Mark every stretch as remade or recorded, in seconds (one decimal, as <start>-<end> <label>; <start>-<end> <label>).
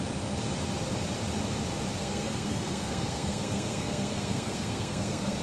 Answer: 0.0-2.0 recorded; 2.0-5.4 remade